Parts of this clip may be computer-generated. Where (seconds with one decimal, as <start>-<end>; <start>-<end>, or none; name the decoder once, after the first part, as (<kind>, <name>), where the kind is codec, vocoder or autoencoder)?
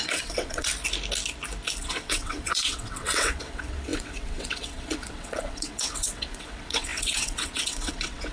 0.0-0.7 (vocoder, WaveNeXt); 1.8-8.3